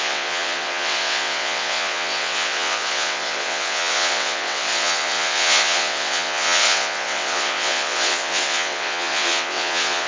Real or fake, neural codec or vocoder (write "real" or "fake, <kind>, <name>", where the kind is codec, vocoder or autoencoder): fake, vocoder, WaveNeXt